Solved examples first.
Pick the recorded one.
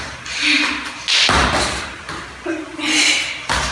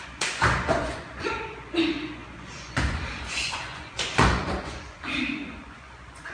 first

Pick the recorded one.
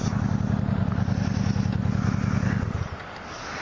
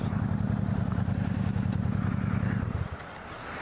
first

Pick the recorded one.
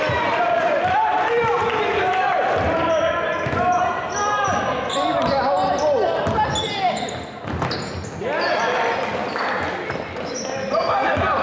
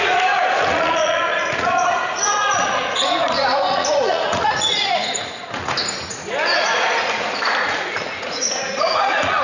first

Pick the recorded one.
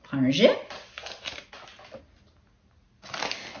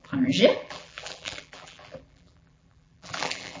first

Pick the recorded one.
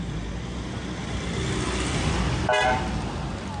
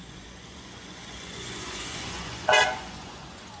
first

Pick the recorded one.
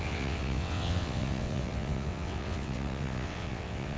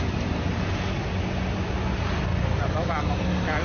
second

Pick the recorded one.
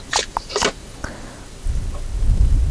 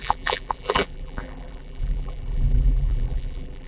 first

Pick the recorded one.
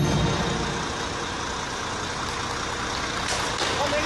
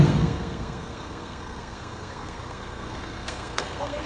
first